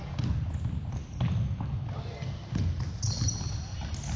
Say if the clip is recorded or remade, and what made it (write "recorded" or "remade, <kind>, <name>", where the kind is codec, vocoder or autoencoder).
recorded